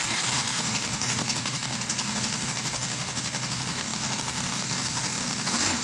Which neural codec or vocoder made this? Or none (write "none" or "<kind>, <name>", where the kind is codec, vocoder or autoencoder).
codec, DAC